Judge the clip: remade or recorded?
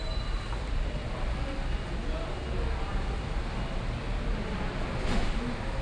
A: recorded